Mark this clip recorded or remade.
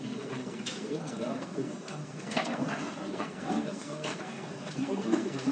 remade